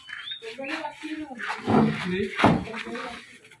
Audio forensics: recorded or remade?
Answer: recorded